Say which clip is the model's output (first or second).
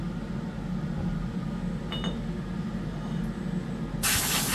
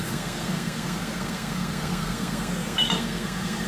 second